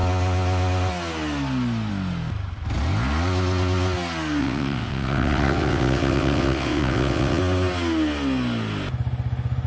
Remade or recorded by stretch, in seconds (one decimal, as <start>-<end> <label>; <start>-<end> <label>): 0.0-4.4 recorded; 4.4-7.4 remade; 7.4-9.7 recorded